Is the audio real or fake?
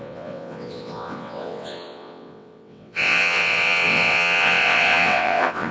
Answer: fake